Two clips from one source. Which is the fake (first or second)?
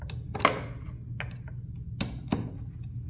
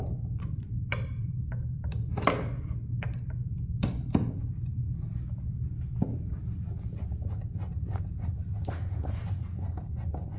second